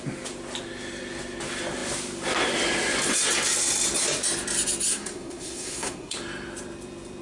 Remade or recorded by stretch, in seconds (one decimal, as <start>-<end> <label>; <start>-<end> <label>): 0.0-4.9 recorded; 4.9-6.2 remade; 6.2-7.2 recorded